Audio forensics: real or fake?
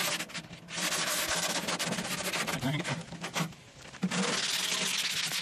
real